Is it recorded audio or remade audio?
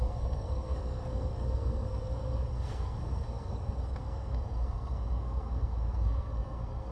remade